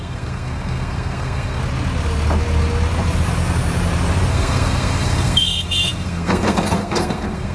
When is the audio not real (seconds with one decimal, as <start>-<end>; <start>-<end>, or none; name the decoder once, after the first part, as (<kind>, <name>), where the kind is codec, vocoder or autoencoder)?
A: 0.0-1.6 (codec, SNAC); 4.3-7.5